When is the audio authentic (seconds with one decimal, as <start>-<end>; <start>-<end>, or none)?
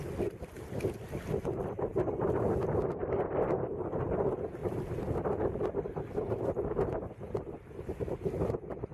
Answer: 0.0-4.6; 8.1-8.9